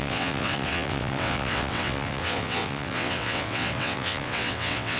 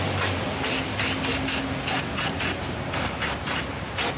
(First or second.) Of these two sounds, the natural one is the second